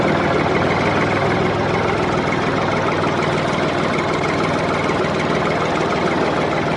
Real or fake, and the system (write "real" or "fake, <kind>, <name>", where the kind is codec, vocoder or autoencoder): fake, vocoder, BigVGAN v2